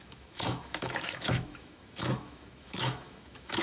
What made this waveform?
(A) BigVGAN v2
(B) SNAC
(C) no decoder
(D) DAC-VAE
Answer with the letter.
D